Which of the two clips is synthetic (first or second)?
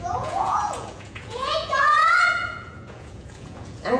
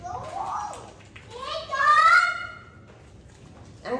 first